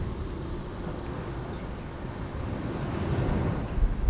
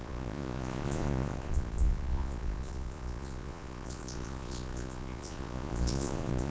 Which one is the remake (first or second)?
second